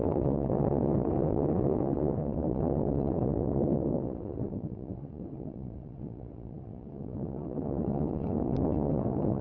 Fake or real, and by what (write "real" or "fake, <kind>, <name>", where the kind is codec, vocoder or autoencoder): fake, vocoder, WaveNeXt